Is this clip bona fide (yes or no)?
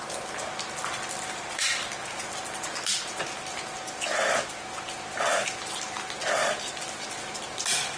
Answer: yes